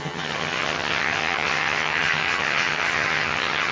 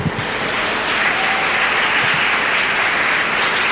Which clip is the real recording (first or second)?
second